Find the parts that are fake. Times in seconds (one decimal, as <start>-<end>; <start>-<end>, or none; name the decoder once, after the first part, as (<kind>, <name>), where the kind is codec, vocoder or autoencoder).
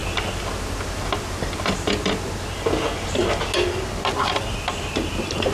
none